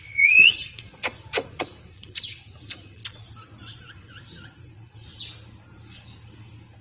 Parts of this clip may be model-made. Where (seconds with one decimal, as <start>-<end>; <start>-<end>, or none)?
0.0-3.0; 3.8-5.1